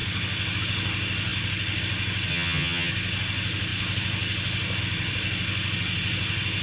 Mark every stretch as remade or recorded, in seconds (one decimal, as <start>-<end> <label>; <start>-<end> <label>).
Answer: 0.0-2.3 recorded; 2.3-2.9 remade; 2.9-6.6 recorded